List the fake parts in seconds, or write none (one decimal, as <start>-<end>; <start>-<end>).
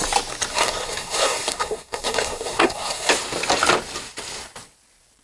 0.5-3.1